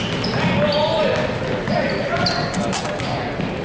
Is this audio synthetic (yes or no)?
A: no